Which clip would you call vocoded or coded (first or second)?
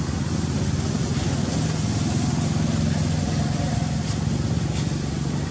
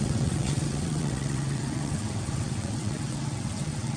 second